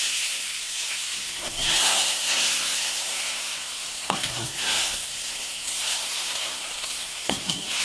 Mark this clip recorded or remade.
remade